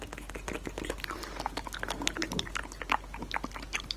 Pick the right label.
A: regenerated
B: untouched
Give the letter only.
B